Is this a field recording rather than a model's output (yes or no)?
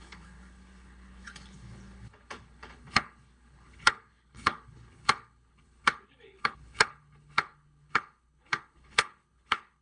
no